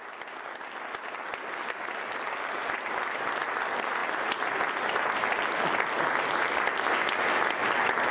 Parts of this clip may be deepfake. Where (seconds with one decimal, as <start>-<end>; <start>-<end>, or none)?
none